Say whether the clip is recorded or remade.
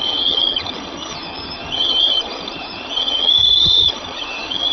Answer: remade